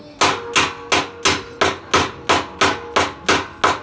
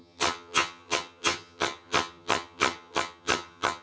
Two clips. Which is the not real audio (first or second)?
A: second